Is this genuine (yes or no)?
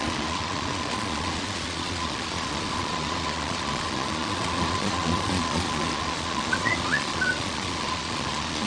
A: no